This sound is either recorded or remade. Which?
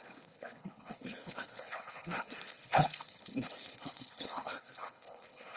remade